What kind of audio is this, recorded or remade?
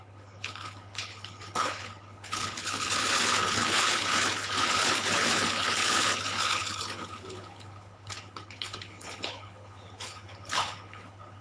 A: remade